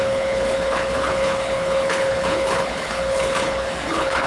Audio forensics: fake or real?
fake